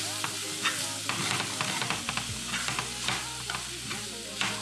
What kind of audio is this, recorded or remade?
recorded